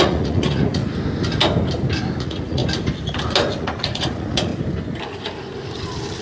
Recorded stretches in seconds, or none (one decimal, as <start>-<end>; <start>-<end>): 0.8-2.2; 2.6-3.6; 4.5-6.2